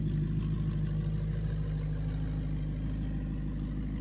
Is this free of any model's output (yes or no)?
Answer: yes